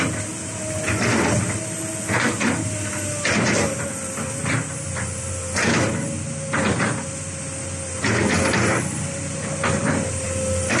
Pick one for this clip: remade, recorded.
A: recorded